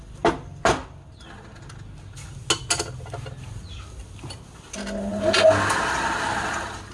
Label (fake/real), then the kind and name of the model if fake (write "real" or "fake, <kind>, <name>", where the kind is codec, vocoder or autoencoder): real